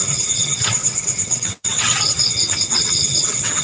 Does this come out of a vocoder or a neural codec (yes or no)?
yes